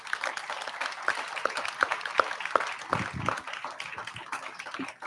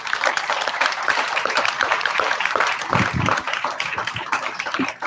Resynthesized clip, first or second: second